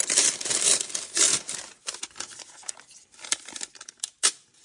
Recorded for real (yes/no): yes